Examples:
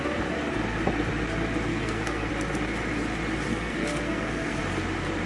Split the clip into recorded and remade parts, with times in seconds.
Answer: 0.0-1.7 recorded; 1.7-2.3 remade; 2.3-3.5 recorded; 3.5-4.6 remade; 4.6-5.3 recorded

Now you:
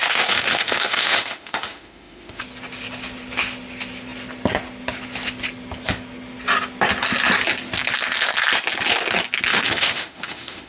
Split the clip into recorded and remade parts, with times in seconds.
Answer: 0.0-2.4 remade; 2.4-9.5 recorded; 9.5-10.7 remade

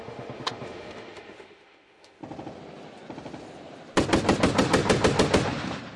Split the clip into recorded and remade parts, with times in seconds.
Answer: 0.0-2.2 remade; 2.2-6.0 recorded

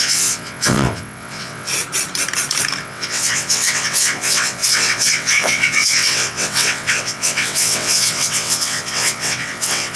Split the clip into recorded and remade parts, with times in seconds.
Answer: 0.0-1.7 remade; 1.7-2.8 recorded; 2.8-10.0 remade

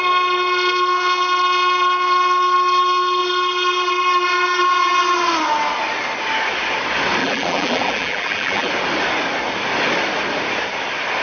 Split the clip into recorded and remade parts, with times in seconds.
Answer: 0.0-7.2 recorded; 7.2-8.7 remade; 8.7-11.2 recorded

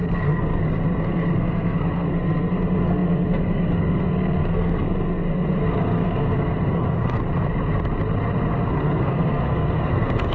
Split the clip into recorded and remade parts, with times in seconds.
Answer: 0.0-7.2 remade; 7.2-8.7 recorded; 8.7-10.3 remade